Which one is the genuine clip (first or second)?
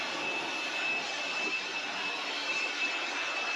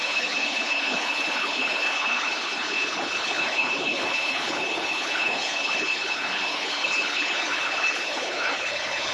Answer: first